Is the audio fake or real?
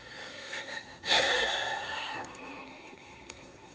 fake